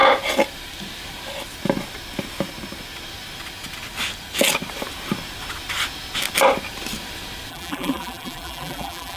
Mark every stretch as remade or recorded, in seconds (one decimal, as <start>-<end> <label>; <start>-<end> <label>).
0.0-7.5 recorded; 7.5-9.2 remade